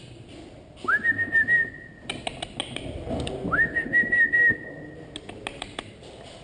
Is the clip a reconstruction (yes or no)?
no